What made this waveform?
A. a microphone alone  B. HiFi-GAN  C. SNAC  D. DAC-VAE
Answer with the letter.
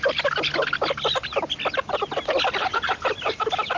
A